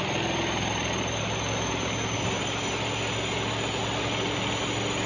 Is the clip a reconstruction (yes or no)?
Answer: no